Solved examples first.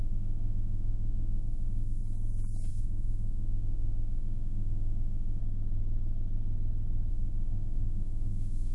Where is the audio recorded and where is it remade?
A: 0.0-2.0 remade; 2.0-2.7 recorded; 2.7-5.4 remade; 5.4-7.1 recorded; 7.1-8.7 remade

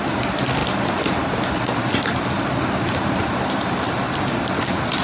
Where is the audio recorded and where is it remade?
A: 0.0-5.0 recorded

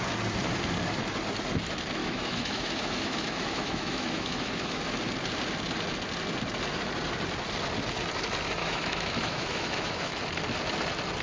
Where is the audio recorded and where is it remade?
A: 0.0-2.0 recorded; 2.0-4.9 remade; 4.9-8.6 recorded; 8.6-10.2 remade; 10.2-11.2 recorded

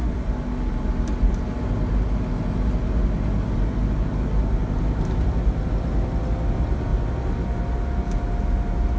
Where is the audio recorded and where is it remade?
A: 0.0-9.0 recorded

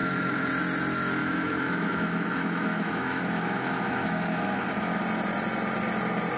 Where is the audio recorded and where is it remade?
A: 0.0-0.5 remade; 0.5-1.2 recorded; 1.2-5.0 remade; 5.0-6.4 recorded

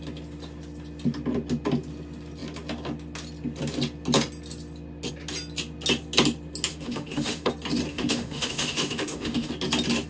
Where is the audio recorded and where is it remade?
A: 0.0-6.7 recorded; 6.7-7.5 remade; 7.5-7.9 recorded; 7.9-9.5 remade; 9.5-10.1 recorded

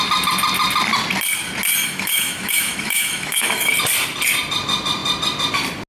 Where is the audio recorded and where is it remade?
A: 0.0-1.8 recorded; 1.8-3.7 remade; 3.7-5.9 recorded

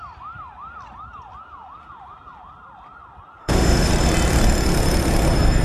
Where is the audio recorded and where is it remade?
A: 0.0-3.4 recorded; 3.4-3.9 remade; 3.9-5.6 recorded